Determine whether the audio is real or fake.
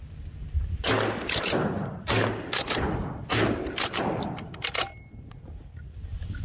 real